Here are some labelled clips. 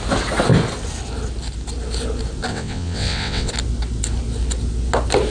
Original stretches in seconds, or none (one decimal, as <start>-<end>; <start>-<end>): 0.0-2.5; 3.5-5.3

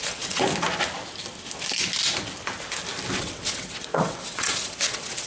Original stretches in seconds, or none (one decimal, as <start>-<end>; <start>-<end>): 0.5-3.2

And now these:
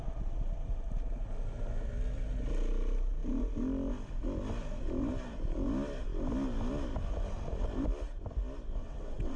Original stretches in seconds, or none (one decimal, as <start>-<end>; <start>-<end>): 0.0-8.8

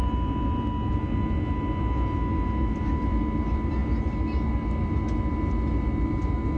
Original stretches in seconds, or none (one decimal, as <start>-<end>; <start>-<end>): 0.0-6.6